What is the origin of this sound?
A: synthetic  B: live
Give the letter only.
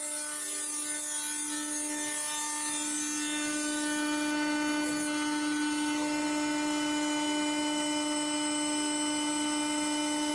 B